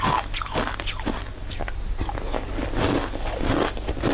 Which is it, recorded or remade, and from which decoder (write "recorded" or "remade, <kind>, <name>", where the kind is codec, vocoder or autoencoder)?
recorded